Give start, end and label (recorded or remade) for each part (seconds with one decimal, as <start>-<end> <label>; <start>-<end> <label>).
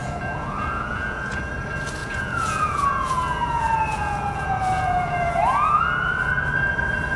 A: 0.0-1.4 remade; 1.4-2.0 recorded; 2.0-5.8 remade; 5.8-7.2 recorded